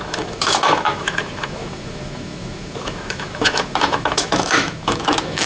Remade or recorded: remade